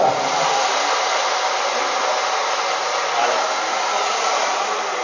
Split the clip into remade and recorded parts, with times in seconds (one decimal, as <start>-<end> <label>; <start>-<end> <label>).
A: 0.0-5.0 recorded